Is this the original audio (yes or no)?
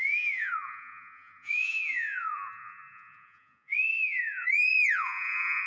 no